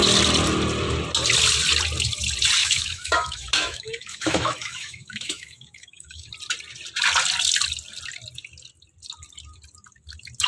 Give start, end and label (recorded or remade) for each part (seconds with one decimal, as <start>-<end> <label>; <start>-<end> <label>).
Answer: 0.0-2.6 recorded; 2.6-6.3 remade; 6.3-10.5 recorded